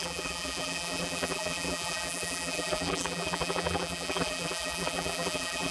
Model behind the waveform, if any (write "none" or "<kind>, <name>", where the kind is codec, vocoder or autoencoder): vocoder, BigVGAN v2